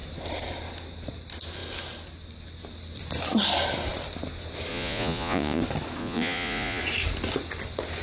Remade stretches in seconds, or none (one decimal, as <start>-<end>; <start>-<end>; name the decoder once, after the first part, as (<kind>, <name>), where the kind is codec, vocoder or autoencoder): 4.7-5.6 (vocoder, Vocos); 6.0-6.8